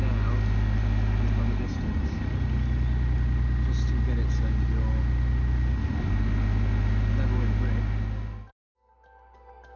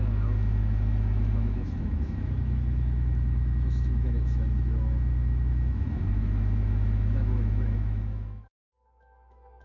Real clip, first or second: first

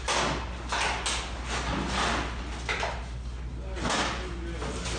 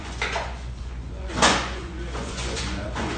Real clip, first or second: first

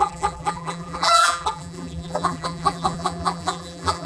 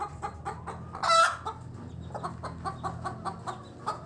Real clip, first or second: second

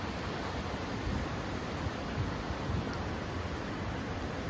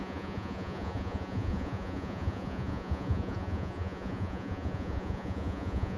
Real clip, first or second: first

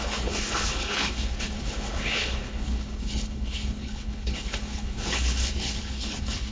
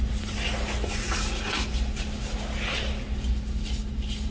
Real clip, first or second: second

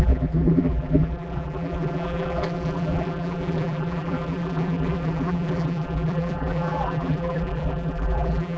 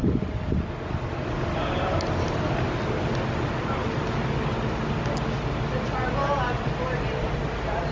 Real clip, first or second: second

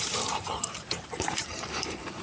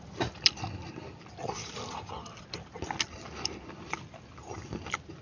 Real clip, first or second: second